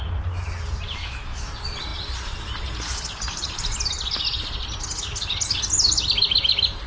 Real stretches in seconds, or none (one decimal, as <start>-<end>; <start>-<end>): 0.0-1.0; 1.5-6.9